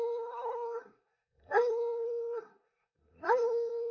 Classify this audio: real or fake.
fake